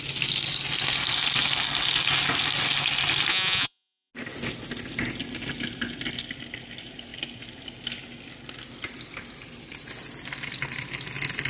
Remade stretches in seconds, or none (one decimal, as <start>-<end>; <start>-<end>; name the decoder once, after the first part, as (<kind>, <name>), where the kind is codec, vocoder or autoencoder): 3.3-4.1 (vocoder, Vocos)